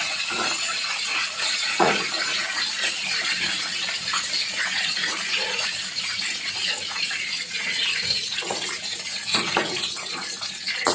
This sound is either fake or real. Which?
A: fake